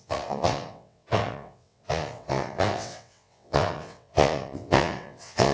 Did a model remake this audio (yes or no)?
yes